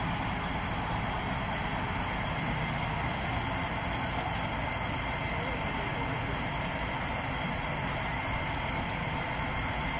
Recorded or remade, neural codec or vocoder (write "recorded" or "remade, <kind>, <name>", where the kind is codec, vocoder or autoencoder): recorded